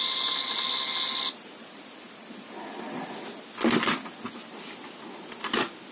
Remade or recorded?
recorded